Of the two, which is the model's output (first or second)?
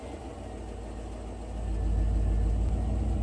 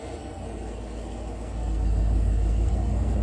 second